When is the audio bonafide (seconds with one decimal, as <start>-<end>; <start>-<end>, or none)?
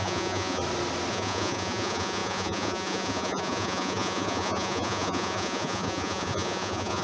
0.6-1.1